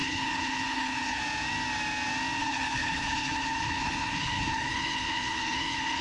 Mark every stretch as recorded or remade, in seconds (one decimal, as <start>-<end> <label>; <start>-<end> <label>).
0.0-1.2 remade; 1.2-2.4 recorded; 2.4-6.0 remade